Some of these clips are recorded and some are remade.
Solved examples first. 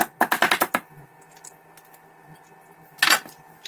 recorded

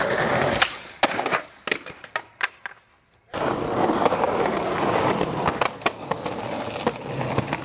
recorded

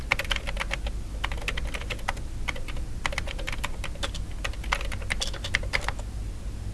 recorded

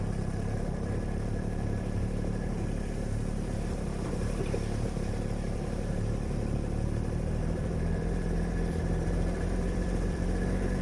remade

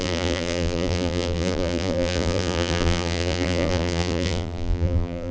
remade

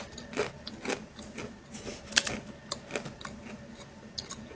recorded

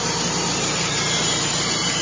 remade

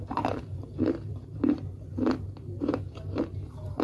remade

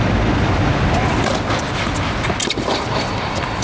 remade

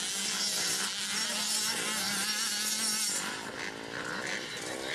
recorded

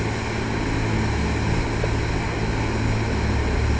recorded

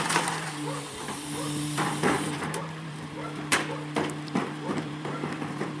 remade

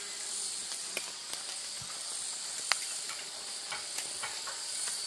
recorded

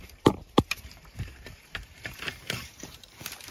remade